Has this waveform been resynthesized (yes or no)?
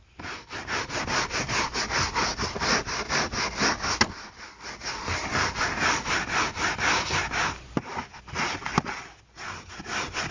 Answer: no